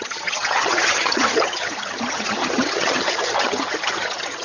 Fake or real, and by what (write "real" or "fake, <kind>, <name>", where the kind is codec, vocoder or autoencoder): fake, vocoder, HiFi-GAN